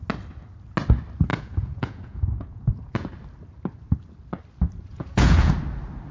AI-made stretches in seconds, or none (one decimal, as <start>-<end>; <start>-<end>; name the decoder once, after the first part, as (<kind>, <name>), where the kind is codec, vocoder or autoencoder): 1.3-3.1 (vocoder, Vocos); 4.9-5.5